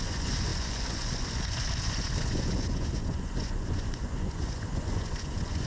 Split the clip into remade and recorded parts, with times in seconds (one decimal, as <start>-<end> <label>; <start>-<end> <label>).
0.0-5.7 remade